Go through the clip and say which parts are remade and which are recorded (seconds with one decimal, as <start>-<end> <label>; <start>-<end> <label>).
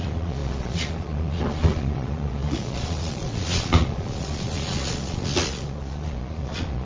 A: 0.0-6.8 remade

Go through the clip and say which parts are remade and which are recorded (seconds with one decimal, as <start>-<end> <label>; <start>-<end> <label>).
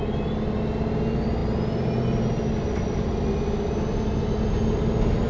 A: 0.0-5.3 recorded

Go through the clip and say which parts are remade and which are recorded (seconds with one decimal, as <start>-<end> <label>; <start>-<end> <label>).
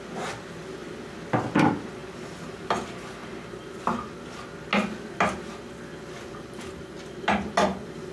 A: 0.0-8.1 recorded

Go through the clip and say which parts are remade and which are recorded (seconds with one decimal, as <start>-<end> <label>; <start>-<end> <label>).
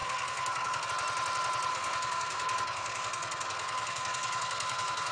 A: 0.0-0.9 remade; 0.9-1.7 recorded; 1.7-5.1 remade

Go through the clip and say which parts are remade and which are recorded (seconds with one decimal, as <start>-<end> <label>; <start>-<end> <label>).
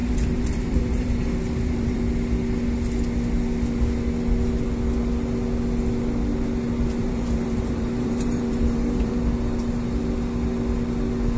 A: 0.0-2.0 remade; 2.0-7.0 recorded; 7.0-9.2 remade; 9.2-11.4 recorded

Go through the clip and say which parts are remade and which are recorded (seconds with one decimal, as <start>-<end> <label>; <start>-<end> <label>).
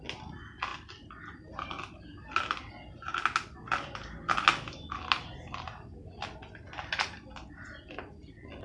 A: 0.0-8.6 recorded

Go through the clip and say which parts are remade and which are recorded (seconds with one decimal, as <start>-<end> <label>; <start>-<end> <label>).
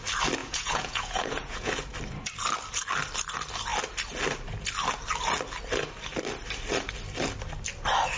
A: 0.0-0.4 recorded; 0.4-1.7 remade; 1.7-8.2 recorded